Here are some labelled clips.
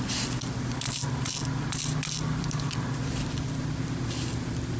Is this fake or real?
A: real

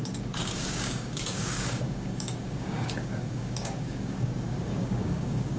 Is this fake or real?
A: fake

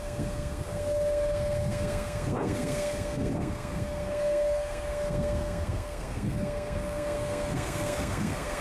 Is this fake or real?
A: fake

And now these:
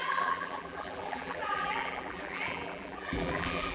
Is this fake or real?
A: fake